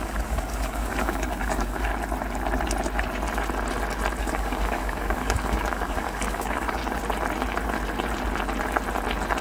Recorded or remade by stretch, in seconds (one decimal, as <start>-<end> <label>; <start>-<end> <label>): 0.0-1.9 remade; 1.9-4.2 recorded; 4.2-6.8 remade; 6.8-9.4 recorded